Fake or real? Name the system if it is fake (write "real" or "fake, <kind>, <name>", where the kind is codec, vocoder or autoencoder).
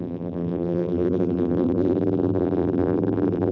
fake, vocoder, BigVGAN v2